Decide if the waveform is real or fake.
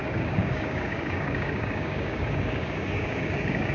fake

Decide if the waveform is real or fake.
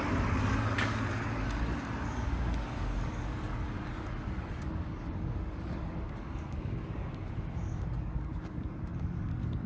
fake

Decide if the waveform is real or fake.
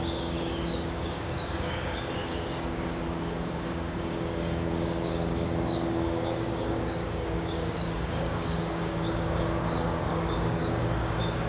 fake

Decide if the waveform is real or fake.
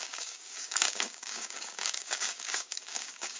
fake